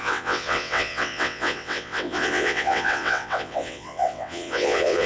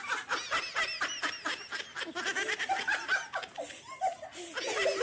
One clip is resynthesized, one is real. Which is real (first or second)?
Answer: second